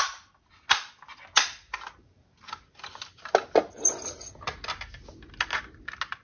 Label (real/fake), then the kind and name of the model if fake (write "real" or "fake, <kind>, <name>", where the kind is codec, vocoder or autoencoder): real